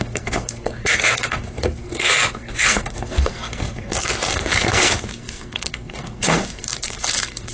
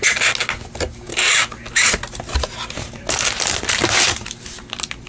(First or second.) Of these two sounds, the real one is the second